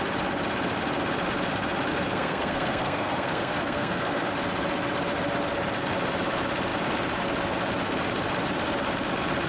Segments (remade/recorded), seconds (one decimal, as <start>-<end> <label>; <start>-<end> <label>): 0.0-1.9 recorded; 1.9-4.3 remade; 4.3-9.5 recorded